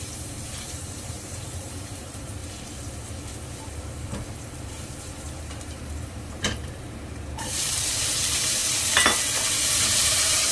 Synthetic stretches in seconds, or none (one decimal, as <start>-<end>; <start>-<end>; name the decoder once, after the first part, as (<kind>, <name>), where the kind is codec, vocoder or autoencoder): 0.0-2.4 (vocoder, BigVGAN v2); 4.4-8.6; 9.8-10.5